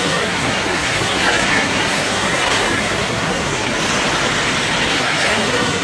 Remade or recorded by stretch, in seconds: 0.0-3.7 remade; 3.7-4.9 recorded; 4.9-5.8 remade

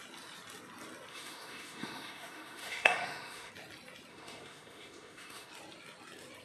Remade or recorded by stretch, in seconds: 0.0-1.1 recorded; 1.1-3.5 remade; 3.5-4.1 recorded; 4.1-5.5 remade; 5.5-6.4 recorded

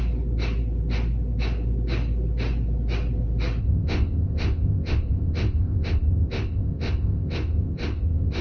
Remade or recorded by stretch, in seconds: 0.0-3.6 recorded; 3.6-8.4 remade

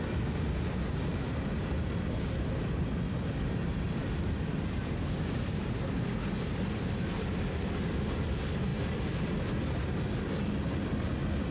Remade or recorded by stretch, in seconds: 0.0-11.5 recorded

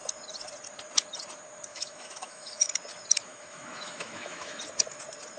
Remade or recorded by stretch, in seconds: 0.0-1.7 recorded; 1.7-2.7 remade; 2.7-3.3 recorded; 3.3-4.6 remade; 4.6-5.4 recorded

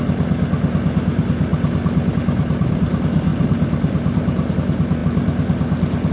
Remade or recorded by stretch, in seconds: 0.0-3.3 recorded; 3.3-4.5 remade; 4.5-6.1 recorded